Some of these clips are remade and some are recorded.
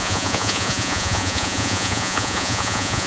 remade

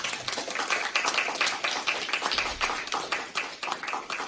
recorded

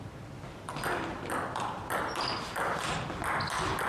recorded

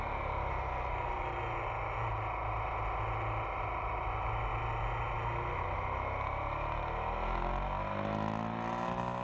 recorded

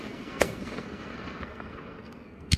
remade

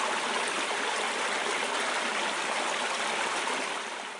recorded